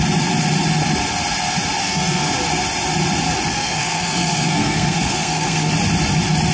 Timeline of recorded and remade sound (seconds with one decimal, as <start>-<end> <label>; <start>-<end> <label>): 0.0-1.8 recorded; 1.8-2.3 remade; 2.3-3.5 recorded; 3.5-5.7 remade; 5.7-6.5 recorded